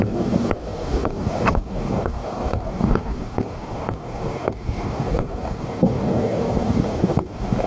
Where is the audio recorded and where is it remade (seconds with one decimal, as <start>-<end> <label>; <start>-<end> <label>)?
0.0-7.7 remade